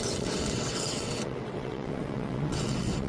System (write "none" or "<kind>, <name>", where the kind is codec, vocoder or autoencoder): vocoder, WaveNeXt